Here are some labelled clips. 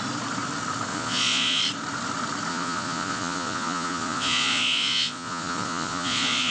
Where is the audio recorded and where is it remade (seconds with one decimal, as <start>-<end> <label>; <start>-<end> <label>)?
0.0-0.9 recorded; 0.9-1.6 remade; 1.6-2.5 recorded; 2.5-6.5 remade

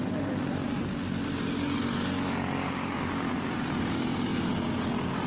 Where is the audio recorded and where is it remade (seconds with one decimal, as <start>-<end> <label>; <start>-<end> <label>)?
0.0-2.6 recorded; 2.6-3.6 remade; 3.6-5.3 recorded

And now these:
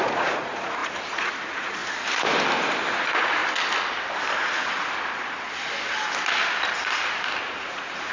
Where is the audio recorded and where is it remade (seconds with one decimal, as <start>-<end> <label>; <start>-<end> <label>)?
0.0-1.8 remade; 1.8-2.9 recorded; 2.9-3.4 remade; 3.4-7.4 recorded; 7.4-8.1 remade

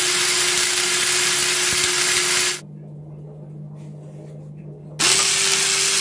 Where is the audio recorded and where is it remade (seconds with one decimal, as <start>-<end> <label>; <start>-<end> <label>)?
0.0-6.0 recorded

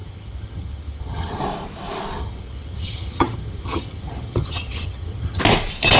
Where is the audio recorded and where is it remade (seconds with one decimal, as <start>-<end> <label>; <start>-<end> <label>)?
0.0-1.4 remade; 1.4-2.2 recorded; 2.2-5.4 remade; 5.4-6.0 recorded

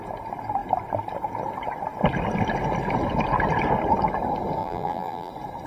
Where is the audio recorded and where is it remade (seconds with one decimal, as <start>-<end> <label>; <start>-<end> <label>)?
0.0-4.6 recorded; 4.6-5.3 remade; 5.3-5.7 recorded

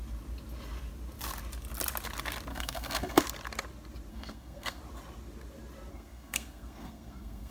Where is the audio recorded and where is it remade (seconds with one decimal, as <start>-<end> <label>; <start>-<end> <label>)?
0.0-2.5 recorded; 2.5-3.2 remade; 3.2-4.1 recorded; 4.1-4.8 remade; 4.8-5.9 recorded; 5.9-7.5 remade